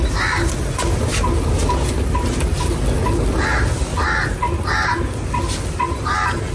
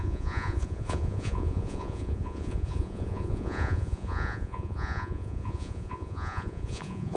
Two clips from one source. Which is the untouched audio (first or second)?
first